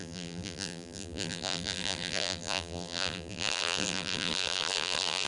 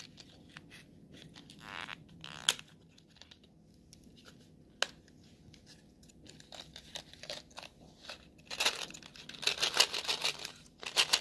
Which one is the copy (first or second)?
first